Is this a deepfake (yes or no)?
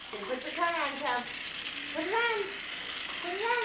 no